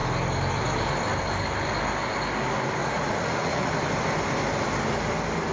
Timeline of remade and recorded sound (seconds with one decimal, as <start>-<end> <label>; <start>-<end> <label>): 0.0-2.8 recorded; 2.8-3.7 remade; 3.7-5.5 recorded